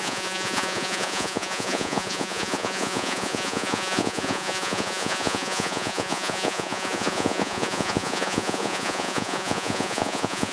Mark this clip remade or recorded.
remade